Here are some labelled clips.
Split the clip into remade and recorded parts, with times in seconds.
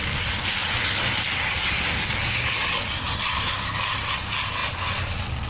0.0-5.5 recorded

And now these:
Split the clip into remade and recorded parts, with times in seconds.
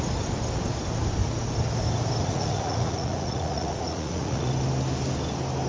0.0-2.2 recorded; 2.2-4.5 remade; 4.5-5.7 recorded